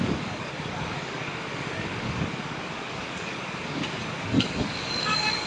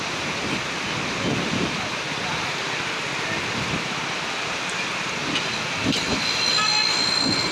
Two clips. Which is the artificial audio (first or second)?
first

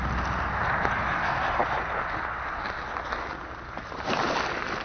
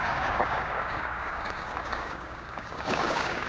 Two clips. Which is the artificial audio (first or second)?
second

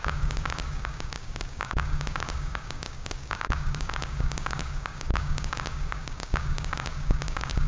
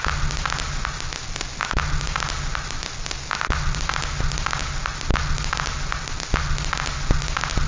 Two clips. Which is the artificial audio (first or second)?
first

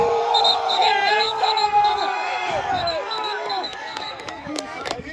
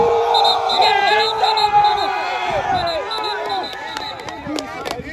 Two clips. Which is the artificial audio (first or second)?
first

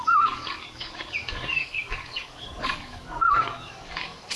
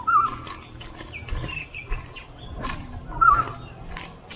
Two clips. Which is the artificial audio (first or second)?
first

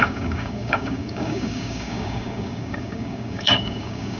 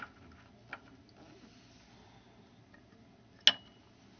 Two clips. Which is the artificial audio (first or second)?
first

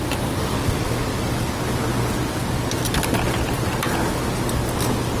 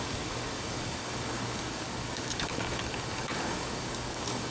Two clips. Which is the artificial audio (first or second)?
second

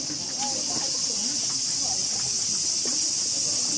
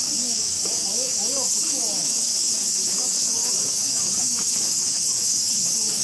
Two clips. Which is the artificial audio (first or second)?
second